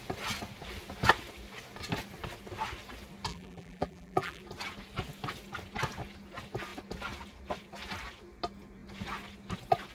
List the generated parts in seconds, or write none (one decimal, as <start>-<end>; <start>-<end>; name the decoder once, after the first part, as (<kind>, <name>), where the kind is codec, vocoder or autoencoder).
3.3-4.4 (vocoder, BigVGAN v2)